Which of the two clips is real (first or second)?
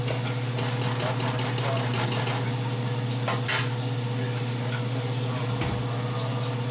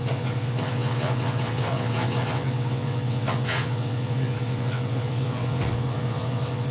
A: first